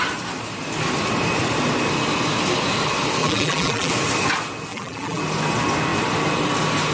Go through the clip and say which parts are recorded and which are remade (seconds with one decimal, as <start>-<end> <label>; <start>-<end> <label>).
0.0-3.2 recorded; 3.2-3.9 remade; 3.9-4.7 recorded; 4.7-5.2 remade; 5.2-6.9 recorded